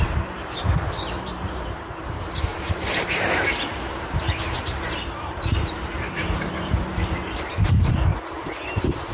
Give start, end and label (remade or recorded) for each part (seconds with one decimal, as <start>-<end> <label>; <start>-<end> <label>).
0.0-9.1 remade